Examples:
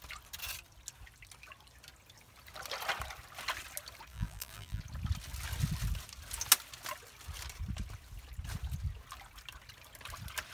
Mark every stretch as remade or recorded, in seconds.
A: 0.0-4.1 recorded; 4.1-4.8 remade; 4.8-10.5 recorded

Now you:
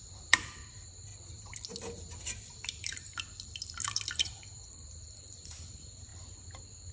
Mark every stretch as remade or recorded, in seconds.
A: 0.0-6.1 remade; 6.1-6.9 recorded

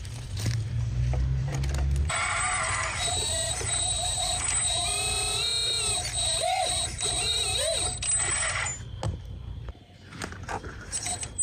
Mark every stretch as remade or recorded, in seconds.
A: 0.0-1.5 remade; 1.5-2.0 recorded; 2.0-5.5 remade; 5.5-6.6 recorded; 6.6-8.7 remade; 8.7-9.3 recorded; 9.3-11.4 remade

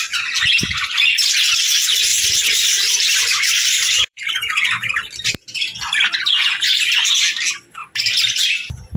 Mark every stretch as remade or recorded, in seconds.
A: 0.0-2.1 recorded; 2.1-7.0 remade; 7.0-7.8 recorded; 7.8-8.4 remade; 8.4-9.0 recorded

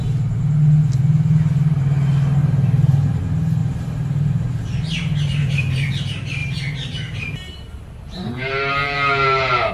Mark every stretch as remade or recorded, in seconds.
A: 0.0-2.4 recorded; 2.4-3.2 remade; 3.2-3.6 recorded; 3.6-5.9 remade; 5.9-6.4 recorded; 6.4-9.7 remade

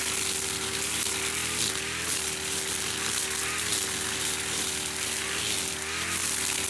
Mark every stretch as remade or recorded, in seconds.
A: 0.0-6.7 recorded

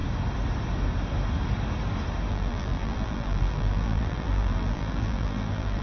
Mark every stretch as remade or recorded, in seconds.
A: 0.0-2.3 recorded; 2.3-5.8 remade

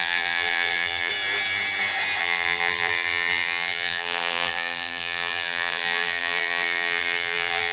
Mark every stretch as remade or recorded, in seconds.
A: 0.0-1.1 remade; 1.1-2.2 recorded; 2.2-7.7 remade